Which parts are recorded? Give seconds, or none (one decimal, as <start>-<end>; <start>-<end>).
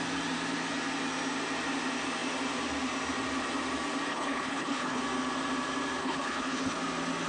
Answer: 0.0-4.1; 5.0-6.0; 6.8-7.3